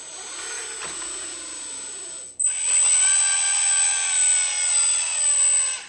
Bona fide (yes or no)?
yes